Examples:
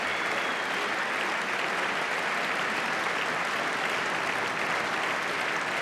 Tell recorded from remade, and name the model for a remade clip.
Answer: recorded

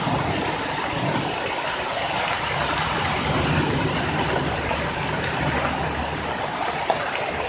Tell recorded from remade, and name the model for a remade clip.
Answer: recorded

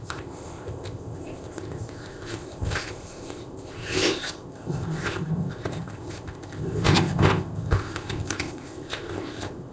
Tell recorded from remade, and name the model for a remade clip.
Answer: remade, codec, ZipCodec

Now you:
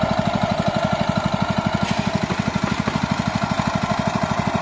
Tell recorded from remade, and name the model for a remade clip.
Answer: remade, vocoder, BigVGAN v2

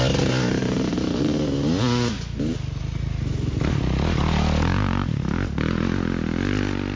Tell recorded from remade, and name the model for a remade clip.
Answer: recorded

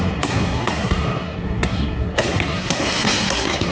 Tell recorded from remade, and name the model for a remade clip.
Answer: remade, codec, SNAC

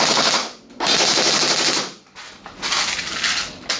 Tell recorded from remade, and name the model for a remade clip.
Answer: recorded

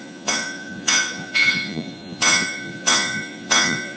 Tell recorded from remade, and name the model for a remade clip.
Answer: remade, vocoder, Vocos